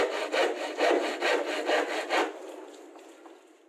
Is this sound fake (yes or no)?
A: no